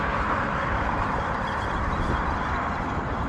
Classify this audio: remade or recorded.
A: recorded